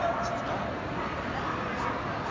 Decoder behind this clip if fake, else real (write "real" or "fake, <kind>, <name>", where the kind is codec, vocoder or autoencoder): real